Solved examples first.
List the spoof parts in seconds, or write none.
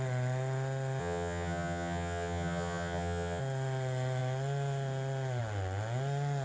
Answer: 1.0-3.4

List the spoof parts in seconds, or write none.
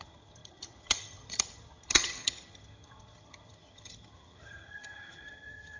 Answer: 0.0-5.8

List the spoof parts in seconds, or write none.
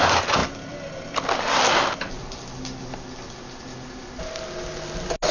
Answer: none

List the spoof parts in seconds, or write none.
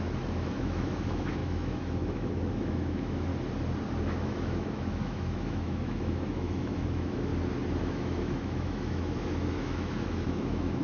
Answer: 0.0-3.3; 4.0-7.3; 7.8-10.8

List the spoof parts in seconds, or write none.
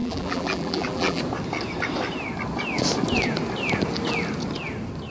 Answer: 0.0-1.2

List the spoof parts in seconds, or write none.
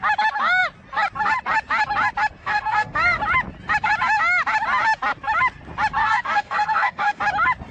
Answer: 2.4-3.2; 6.0-7.2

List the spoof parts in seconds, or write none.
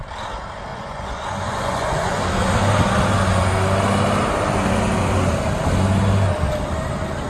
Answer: 0.7-2.2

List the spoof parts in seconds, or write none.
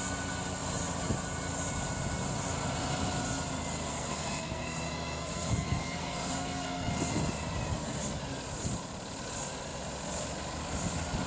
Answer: 3.9-6.9